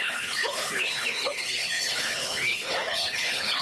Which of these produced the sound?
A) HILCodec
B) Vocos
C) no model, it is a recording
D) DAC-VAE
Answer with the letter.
A